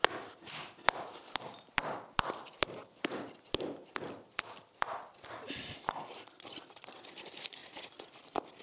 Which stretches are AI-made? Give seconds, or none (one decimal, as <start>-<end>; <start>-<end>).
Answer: 7.6-8.1